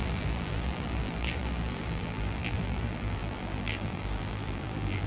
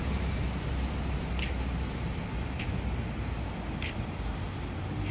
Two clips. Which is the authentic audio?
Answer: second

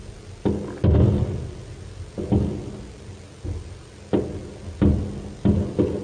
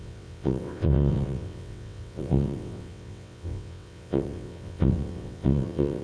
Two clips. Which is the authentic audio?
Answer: first